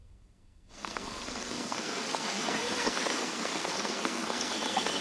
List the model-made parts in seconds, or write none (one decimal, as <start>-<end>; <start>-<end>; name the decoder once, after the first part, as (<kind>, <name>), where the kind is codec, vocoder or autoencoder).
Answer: 0.0-5.0 (codec, SNAC)